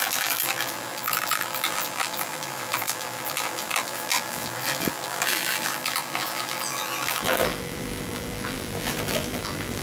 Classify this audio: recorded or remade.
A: remade